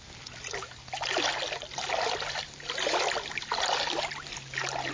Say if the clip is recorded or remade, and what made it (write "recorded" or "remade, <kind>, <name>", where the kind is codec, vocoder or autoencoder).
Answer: recorded